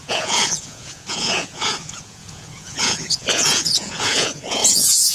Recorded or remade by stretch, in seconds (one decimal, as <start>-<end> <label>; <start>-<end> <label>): 0.0-5.1 remade